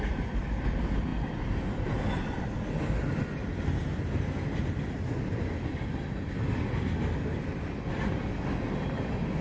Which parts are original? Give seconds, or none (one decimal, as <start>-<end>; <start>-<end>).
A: 0.0-9.4